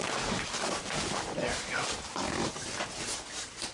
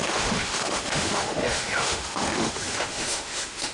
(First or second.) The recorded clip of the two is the first